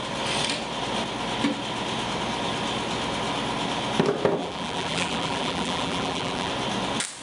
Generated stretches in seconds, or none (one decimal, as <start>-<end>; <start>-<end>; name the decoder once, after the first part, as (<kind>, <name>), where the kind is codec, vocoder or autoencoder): 4.4-6.5 (vocoder, BigVGAN v2)